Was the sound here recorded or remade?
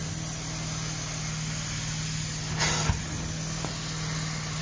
recorded